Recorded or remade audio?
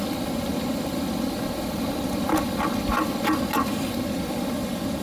recorded